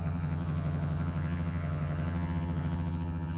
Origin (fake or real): fake